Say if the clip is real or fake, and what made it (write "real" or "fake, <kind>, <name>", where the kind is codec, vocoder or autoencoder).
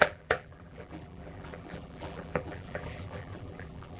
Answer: fake, vocoder, BigVGAN v2